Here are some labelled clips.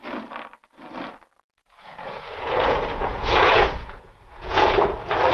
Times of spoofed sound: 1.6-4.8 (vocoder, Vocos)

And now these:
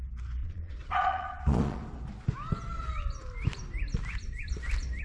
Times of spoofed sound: 0.4-1.8 (vocoder, Vocos)

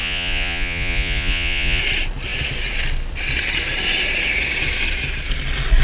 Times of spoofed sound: 0.0-1.8 (vocoder, Vocos)

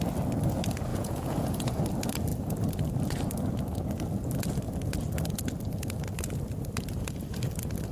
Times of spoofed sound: 0.9-1.8 (vocoder, Vocos)